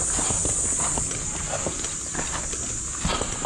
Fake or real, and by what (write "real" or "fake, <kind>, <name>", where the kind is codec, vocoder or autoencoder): real